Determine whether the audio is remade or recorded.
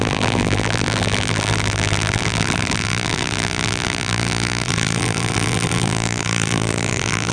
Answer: remade